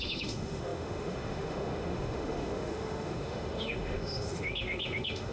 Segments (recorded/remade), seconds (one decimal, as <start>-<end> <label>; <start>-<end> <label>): 0.0-5.3 remade